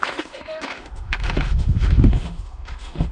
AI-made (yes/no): yes